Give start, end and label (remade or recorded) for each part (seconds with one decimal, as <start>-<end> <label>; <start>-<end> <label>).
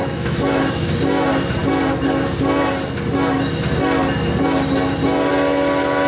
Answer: 0.0-0.9 remade; 0.9-6.1 recorded